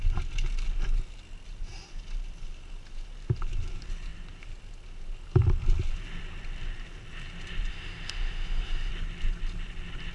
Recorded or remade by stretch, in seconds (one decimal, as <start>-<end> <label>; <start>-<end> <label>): 0.0-7.7 recorded; 7.7-8.9 remade; 8.9-10.1 recorded